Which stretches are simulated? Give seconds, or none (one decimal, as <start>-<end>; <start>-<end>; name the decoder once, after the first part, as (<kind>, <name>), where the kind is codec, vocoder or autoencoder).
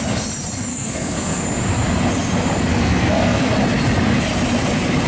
0.7-1.4 (codec, SNAC); 2.7-3.5